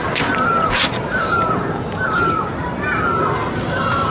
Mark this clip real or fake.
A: real